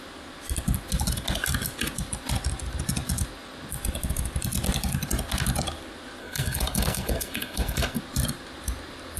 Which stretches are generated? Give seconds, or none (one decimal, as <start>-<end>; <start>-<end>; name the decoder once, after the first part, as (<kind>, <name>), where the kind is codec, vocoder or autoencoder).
6.2-8.0 (codec, SNAC)